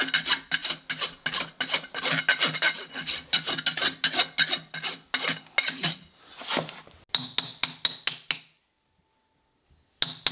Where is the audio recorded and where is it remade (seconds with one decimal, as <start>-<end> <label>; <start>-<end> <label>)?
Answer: 0.0-10.3 recorded